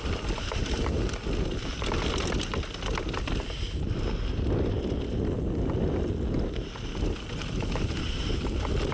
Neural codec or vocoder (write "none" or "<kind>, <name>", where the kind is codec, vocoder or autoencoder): none